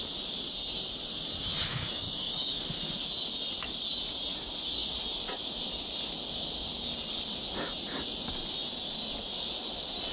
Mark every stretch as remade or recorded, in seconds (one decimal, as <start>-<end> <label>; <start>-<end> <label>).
0.0-1.7 recorded; 1.7-2.6 remade; 2.6-10.1 recorded